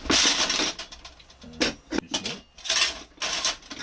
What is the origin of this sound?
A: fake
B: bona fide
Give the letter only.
B